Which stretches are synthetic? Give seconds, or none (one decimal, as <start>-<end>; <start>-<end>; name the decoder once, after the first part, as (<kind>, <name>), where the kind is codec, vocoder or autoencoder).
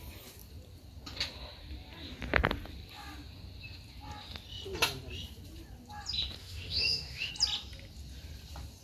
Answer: 6.4-7.3 (autoencoder, DAC-VAE)